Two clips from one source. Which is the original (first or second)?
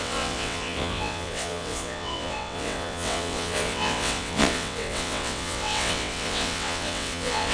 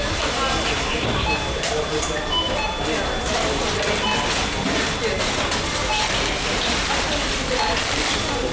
second